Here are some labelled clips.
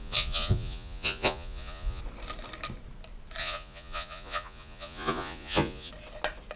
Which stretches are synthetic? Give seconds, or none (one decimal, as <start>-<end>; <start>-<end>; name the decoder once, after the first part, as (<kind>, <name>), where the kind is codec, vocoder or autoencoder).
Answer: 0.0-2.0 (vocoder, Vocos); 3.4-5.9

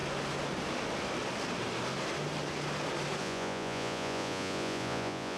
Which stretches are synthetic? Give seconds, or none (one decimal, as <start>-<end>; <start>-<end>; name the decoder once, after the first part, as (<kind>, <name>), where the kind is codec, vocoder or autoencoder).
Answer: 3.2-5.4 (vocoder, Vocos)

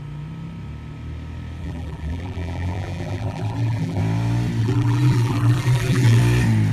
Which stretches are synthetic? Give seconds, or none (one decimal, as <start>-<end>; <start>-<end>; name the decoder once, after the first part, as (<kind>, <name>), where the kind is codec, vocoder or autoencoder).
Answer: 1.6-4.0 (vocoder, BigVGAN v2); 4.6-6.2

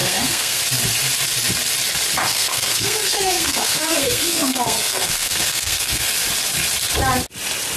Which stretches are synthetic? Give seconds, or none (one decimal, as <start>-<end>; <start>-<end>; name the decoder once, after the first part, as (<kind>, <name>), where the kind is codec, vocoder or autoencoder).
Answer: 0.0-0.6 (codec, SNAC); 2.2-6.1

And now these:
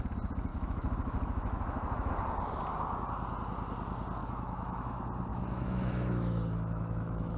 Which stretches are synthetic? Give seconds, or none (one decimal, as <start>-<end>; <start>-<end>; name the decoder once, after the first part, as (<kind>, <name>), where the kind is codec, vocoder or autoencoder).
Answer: 0.5-2.1 (autoencoder, DAC-VAE); 4.2-4.8; 5.3-7.4